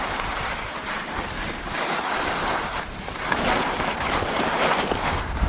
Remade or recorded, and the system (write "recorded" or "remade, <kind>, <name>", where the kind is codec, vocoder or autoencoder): remade, vocoder, BigVGAN v2